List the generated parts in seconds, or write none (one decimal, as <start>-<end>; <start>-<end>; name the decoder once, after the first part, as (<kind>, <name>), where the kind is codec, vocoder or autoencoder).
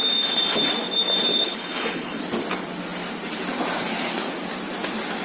1.3-2.2 (codec, HILCodec)